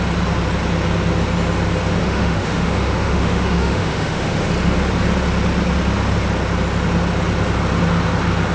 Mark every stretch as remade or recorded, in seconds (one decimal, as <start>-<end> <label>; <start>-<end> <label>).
0.0-2.0 recorded; 2.0-4.5 remade; 4.5-8.5 recorded